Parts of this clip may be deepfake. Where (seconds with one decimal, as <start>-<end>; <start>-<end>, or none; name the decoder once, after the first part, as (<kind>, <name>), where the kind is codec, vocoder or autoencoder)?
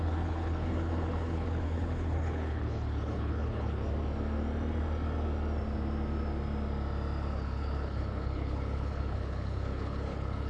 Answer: 0.0-3.8 (codec, HILCodec); 7.3-10.5